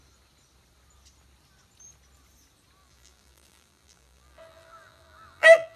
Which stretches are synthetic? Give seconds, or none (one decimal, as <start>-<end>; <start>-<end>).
2.8-5.8